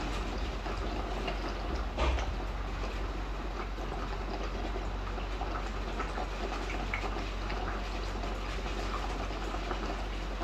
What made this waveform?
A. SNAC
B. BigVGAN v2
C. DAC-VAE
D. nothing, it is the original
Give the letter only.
D